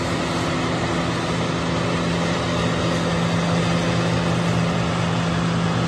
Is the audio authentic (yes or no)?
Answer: yes